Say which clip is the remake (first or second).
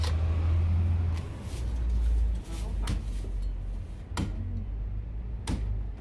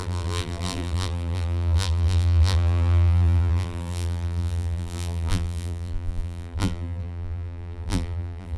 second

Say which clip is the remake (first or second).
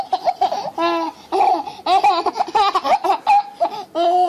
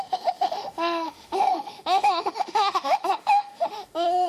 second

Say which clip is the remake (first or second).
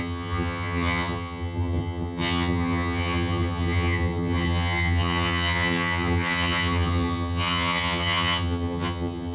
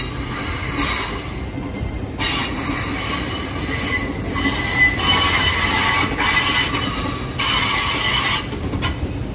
first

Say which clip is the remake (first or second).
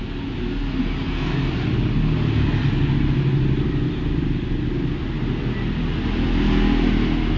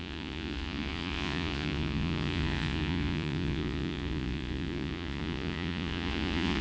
second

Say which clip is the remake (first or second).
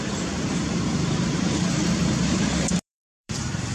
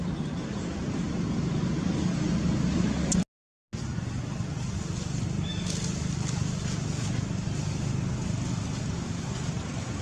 first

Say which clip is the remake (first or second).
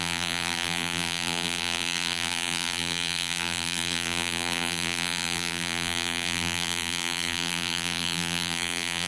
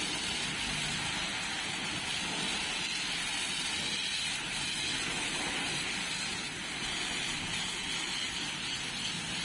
first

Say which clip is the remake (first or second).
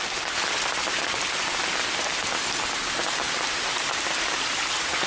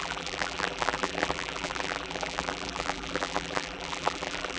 second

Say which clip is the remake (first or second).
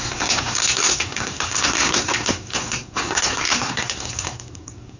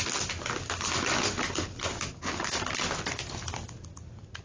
first